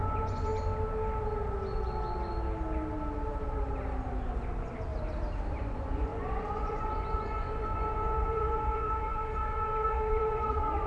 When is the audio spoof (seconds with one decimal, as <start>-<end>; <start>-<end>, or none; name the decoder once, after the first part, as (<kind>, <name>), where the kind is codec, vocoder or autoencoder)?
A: 0.0-0.5 (vocoder, Vocos); 4.3-4.9; 5.6-10.9